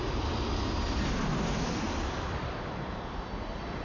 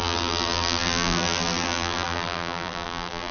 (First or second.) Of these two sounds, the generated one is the second